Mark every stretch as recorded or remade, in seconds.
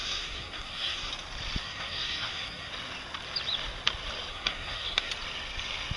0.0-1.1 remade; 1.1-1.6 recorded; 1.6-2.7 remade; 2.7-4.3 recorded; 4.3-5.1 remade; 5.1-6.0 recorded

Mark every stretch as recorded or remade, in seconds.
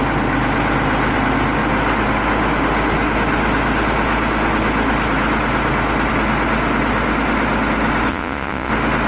0.0-8.1 recorded; 8.1-8.7 remade; 8.7-9.1 recorded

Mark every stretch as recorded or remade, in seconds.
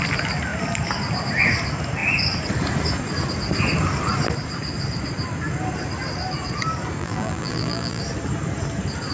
0.0-7.0 recorded; 7.0-8.0 remade; 8.0-9.1 recorded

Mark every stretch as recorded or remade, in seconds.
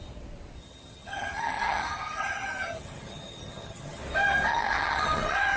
0.0-0.6 recorded; 0.6-4.0 remade; 4.0-4.5 recorded; 4.5-5.6 remade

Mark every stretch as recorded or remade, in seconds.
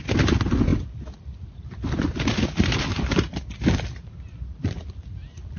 0.0-5.6 recorded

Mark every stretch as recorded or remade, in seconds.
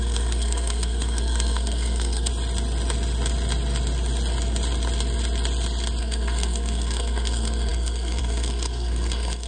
0.0-2.3 remade; 2.3-6.0 recorded; 6.0-9.5 remade